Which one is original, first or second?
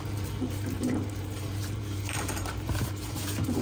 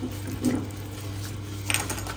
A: second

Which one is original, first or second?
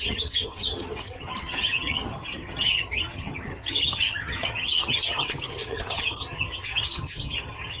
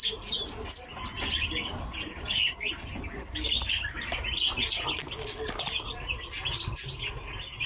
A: second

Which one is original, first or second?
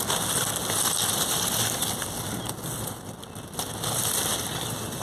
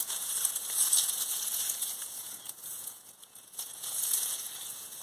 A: first